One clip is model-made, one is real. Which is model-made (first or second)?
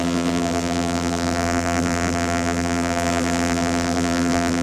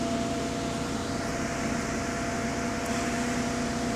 first